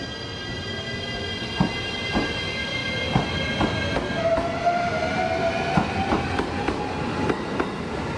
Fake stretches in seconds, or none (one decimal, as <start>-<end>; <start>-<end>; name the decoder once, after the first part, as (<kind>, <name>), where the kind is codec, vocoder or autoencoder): none